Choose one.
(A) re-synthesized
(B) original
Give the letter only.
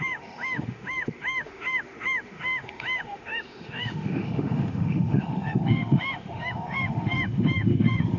A